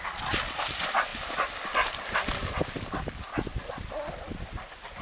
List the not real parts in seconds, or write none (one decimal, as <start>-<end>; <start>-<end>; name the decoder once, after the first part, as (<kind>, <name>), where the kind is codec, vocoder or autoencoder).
none